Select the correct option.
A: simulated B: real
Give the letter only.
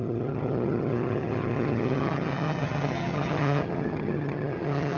A